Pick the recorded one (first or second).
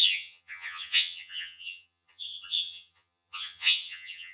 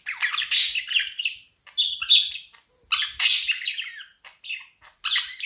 second